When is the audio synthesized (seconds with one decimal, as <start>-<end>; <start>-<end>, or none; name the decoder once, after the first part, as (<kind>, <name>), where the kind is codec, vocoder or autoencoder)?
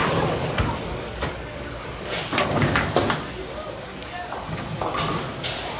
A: 0.0-3.0 (codec, DAC); 3.9-4.6